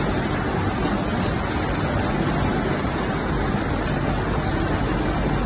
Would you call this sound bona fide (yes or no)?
yes